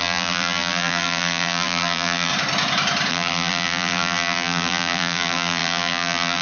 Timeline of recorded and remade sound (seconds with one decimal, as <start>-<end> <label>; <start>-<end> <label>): 0.0-2.3 remade; 2.3-3.1 recorded; 3.1-6.4 remade